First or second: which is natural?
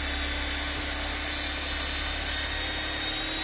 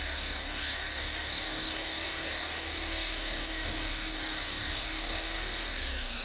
first